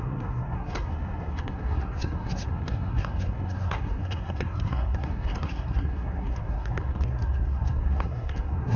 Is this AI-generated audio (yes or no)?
yes